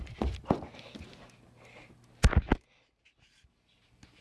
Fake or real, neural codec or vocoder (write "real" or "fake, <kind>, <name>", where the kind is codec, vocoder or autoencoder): real